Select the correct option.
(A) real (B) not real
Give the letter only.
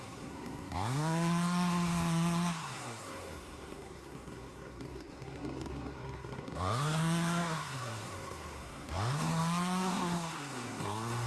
B